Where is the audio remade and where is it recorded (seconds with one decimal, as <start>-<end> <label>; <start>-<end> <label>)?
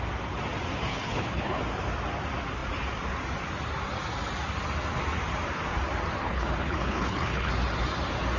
0.0-0.9 recorded; 0.9-1.6 remade; 1.6-6.2 recorded; 6.2-7.5 remade; 7.5-8.4 recorded